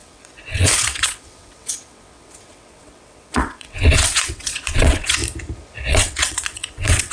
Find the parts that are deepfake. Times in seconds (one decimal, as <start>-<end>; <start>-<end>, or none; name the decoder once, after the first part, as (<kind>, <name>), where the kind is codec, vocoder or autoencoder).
0.0-5.2 (vocoder, WaveNeXt); 5.9-7.1